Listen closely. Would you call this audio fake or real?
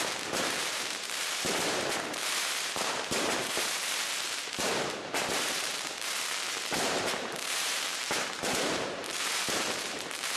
fake